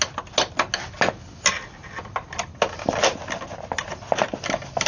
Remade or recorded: recorded